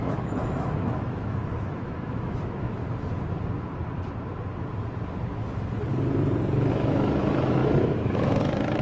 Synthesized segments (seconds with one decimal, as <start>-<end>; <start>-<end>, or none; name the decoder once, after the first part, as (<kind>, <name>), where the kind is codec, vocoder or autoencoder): 0.0-2.8 (autoencoder, DAC-VAE); 6.7-8.8